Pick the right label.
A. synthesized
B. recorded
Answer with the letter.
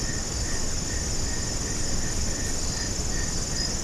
B